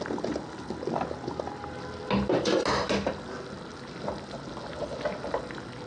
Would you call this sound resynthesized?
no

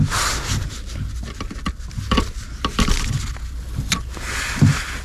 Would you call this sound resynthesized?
no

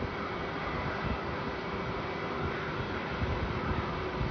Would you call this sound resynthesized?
no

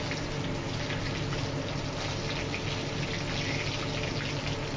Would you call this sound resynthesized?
no